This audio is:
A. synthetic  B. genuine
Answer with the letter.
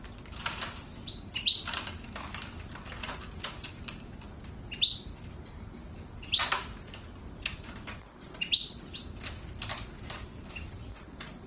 B